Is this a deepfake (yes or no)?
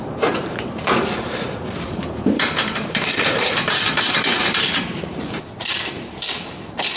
yes